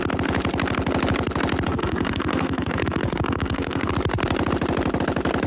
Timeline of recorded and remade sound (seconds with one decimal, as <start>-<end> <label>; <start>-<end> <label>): 0.0-1.7 recorded; 1.7-3.9 remade; 3.9-5.5 recorded

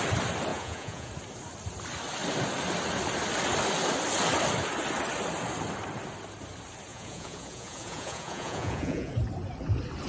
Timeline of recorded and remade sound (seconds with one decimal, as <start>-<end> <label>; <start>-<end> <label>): 0.0-0.5 recorded; 0.5-1.1 remade; 1.1-6.9 recorded; 6.9-9.1 remade; 9.1-10.1 recorded